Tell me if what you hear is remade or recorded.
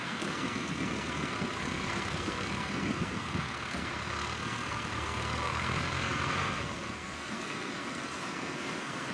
remade